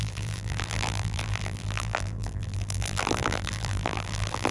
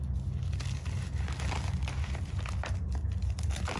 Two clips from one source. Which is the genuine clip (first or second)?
second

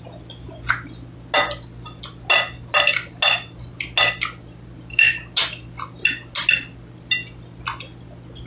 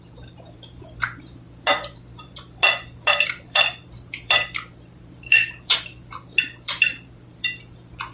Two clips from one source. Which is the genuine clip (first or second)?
first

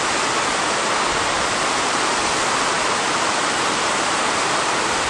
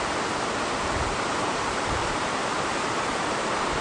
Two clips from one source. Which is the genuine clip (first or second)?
first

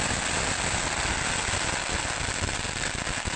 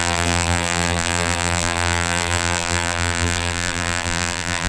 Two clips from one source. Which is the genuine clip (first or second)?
first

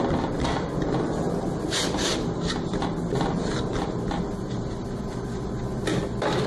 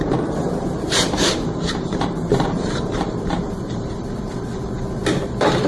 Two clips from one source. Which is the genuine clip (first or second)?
first